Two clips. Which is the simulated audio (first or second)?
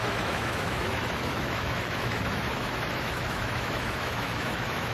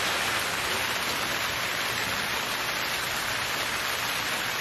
first